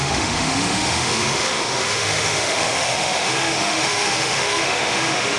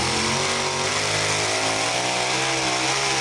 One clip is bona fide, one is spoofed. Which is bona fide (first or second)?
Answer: second